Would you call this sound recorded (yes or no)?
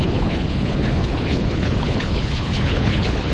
no